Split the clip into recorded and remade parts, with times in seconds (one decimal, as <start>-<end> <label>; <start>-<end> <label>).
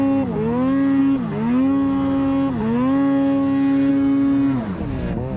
0.0-5.4 recorded